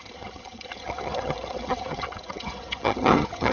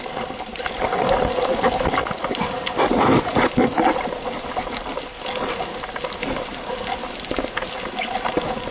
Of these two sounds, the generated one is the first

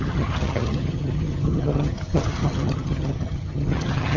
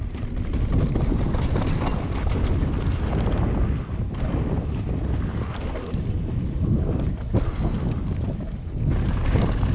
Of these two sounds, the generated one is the first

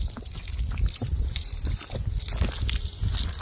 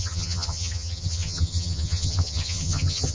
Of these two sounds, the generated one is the second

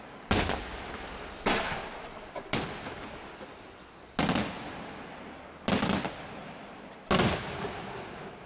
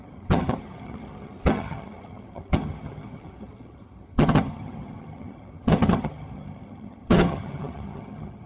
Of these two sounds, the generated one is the second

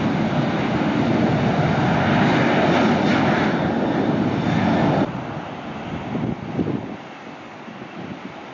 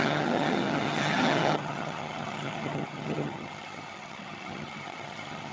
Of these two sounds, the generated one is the second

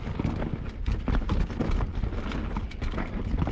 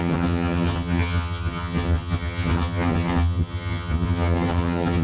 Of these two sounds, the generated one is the second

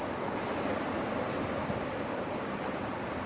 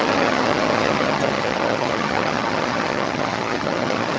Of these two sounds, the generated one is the second